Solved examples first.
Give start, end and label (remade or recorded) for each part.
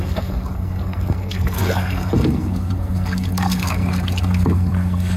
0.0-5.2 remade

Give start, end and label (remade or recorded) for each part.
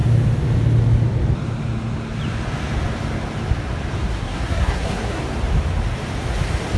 0.0-4.1 recorded; 4.1-5.2 remade; 5.2-6.8 recorded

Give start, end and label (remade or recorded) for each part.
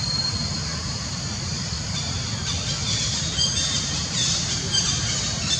0.0-0.7 recorded; 0.7-2.0 remade; 2.0-5.6 recorded